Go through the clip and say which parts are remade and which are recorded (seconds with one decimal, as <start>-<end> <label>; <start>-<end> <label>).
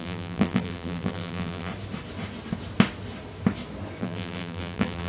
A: 0.0-1.7 remade; 1.7-4.0 recorded; 4.0-5.1 remade